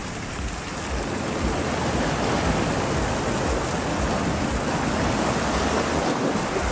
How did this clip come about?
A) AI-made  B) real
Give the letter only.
B